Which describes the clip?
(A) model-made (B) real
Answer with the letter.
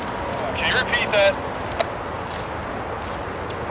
B